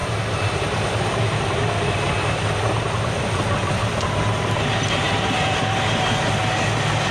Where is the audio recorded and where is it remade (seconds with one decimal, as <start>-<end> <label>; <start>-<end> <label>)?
0.0-3.2 remade; 3.2-3.8 recorded; 3.8-5.5 remade; 5.5-7.1 recorded